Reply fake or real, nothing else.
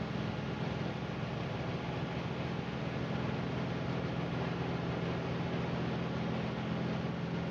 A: real